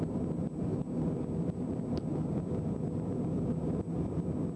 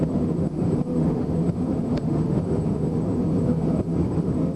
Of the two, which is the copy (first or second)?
second